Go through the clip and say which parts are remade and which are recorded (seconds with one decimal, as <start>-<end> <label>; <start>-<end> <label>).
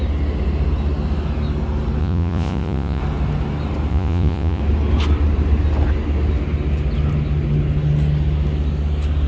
0.0-2.0 recorded; 2.0-3.0 remade; 3.0-3.9 recorded; 3.9-4.6 remade; 4.6-9.3 recorded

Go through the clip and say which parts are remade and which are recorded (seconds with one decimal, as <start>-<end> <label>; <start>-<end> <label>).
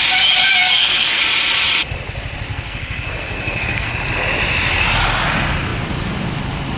0.0-0.6 recorded; 0.6-1.2 remade; 1.2-2.5 recorded; 2.5-3.9 remade; 3.9-6.8 recorded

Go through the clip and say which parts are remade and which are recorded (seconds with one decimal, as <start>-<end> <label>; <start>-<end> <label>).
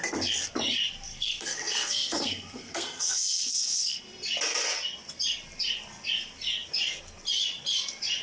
0.0-1.1 recorded; 1.1-4.0 remade; 4.0-8.2 recorded